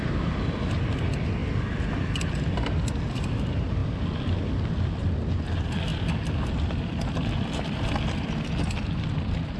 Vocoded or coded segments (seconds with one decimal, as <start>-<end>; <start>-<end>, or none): none